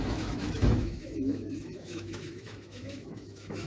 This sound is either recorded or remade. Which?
remade